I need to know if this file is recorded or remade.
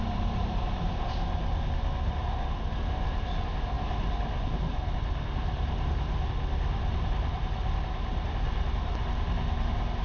recorded